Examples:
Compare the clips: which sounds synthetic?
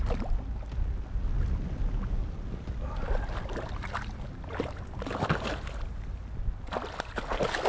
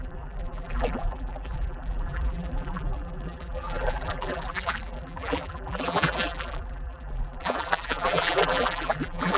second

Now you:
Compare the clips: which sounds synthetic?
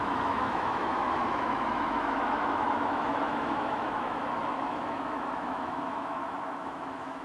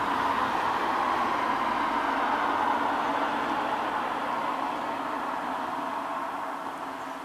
first